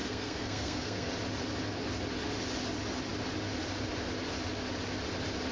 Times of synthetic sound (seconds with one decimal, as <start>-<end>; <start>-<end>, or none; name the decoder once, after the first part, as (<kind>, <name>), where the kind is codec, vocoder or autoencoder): 0.0-1.1 (codec, SNAC)